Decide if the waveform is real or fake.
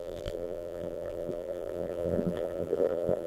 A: fake